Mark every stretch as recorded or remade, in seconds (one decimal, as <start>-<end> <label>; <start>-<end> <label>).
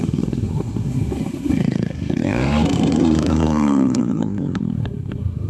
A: 0.0-5.5 remade